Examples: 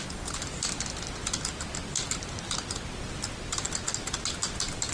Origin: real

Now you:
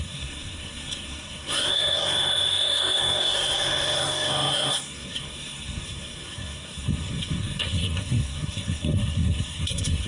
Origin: fake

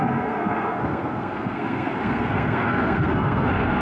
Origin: fake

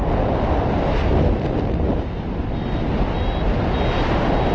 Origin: real